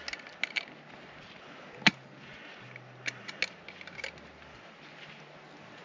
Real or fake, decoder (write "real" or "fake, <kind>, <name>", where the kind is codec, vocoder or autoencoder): real